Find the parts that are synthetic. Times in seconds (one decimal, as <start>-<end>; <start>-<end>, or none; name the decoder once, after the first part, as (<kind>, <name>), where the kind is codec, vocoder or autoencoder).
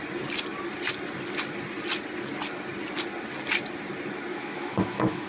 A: 4.3-5.3 (autoencoder, DAC-VAE)